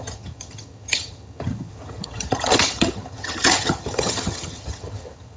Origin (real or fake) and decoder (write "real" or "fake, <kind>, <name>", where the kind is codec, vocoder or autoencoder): fake, vocoder, HiFi-GAN